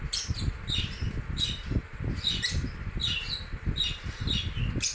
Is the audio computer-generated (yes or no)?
no